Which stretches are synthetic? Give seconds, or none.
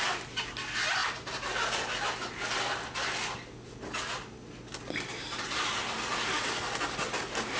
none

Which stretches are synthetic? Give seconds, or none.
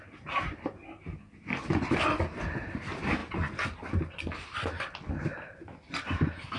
none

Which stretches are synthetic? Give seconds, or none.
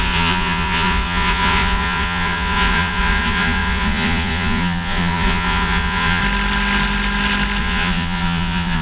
0.0-6.2 (vocoder, Vocos); 7.6-8.8